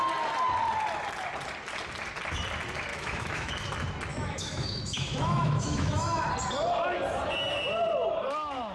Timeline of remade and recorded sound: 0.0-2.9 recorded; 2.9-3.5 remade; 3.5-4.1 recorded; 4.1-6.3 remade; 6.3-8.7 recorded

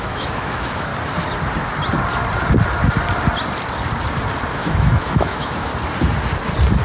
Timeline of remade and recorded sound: 0.0-0.9 remade; 0.9-4.5 recorded; 4.5-5.7 remade; 5.7-6.8 recorded

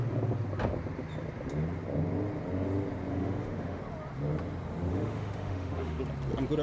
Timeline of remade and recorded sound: 0.0-3.1 recorded; 3.1-3.8 remade; 3.8-4.9 recorded; 4.9-6.0 remade; 6.0-6.6 recorded